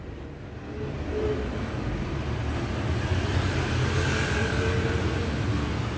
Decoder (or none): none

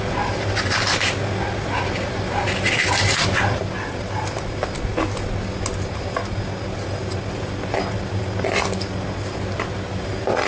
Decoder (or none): none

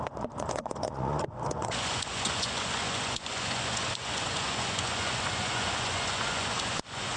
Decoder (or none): vocoder, Vocos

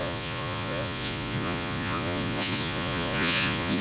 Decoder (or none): vocoder, Vocos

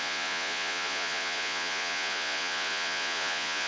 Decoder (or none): vocoder, Vocos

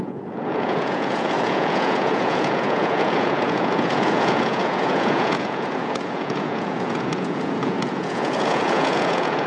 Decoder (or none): vocoder, Vocos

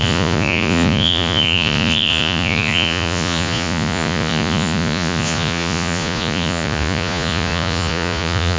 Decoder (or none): vocoder, Vocos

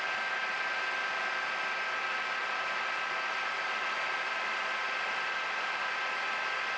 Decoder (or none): none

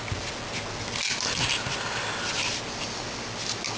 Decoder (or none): none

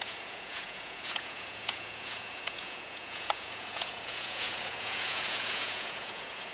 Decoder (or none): vocoder, Vocos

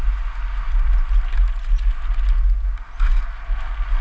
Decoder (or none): none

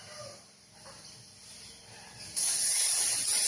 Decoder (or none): none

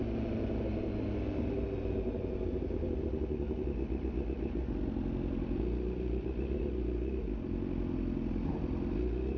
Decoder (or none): none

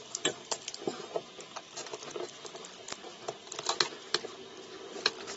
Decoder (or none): none